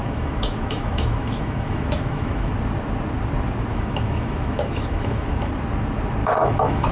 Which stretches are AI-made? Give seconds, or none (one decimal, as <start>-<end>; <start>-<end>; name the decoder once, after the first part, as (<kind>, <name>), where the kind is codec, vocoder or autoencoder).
0.0-2.5 (autoencoder, DAC-VAE); 3.7-5.5; 6.2-6.9

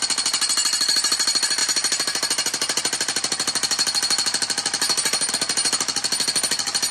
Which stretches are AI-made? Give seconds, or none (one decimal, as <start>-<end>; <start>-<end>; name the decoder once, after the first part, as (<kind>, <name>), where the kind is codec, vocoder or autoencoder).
none